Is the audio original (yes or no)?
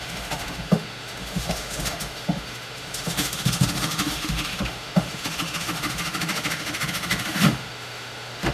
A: no